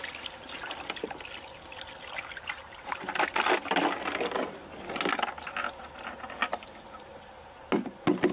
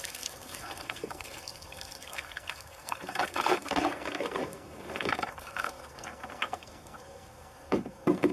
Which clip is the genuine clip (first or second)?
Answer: first